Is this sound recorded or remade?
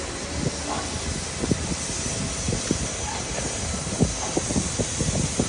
recorded